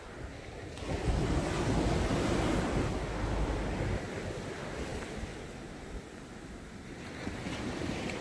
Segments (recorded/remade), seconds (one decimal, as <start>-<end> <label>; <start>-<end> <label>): 0.0-8.2 recorded